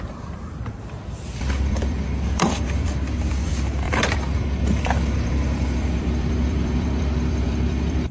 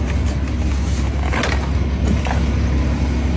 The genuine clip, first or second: second